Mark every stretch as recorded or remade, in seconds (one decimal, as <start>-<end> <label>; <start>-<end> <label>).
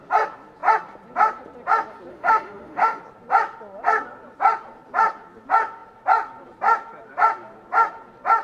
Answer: 0.0-2.1 recorded; 2.1-3.0 remade; 3.0-8.4 recorded